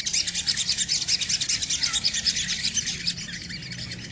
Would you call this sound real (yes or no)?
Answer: yes